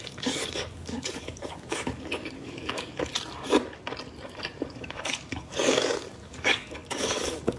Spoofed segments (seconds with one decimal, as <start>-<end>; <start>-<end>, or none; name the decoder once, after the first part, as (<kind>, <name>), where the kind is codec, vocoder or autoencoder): 0.0-3.1 (codec, DAC); 4.7-7.6

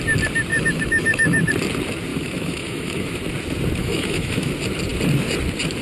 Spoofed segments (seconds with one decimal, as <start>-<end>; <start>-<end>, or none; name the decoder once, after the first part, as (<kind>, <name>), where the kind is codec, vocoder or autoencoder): 0.5-1.5 (autoencoder, DAC-VAE); 2.1-3.2; 3.8-4.5

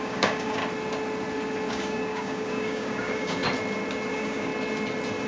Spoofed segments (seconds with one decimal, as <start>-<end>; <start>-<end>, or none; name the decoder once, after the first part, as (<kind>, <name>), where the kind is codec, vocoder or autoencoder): 0.0-0.6 (codec, DAC); 1.7-3.4; 4.1-4.5

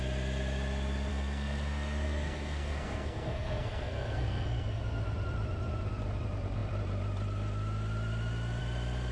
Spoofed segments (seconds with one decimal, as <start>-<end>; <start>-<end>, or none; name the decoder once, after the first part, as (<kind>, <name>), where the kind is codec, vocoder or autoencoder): 1.1-4.8 (codec, SNAC)

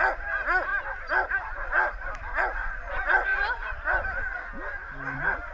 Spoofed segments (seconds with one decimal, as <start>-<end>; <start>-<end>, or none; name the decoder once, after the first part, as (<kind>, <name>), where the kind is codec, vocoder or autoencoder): 0.7-2.1 (vocoder, BigVGAN v2); 3.3-4.2